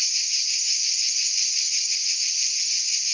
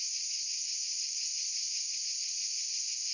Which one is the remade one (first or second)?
first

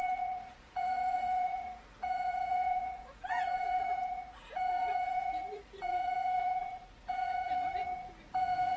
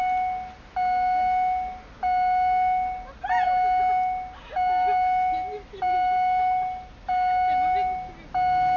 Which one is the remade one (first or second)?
first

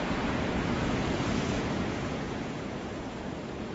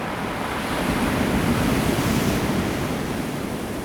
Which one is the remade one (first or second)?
first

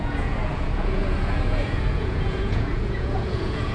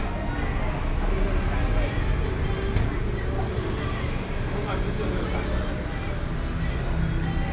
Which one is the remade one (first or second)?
first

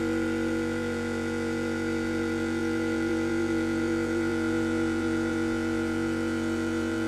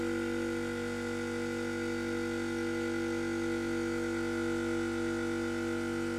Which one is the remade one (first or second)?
first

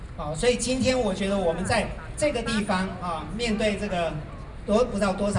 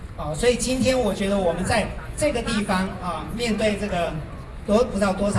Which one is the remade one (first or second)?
second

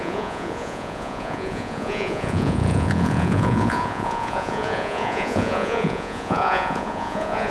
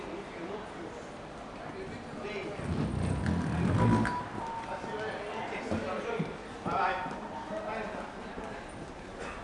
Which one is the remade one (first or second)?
first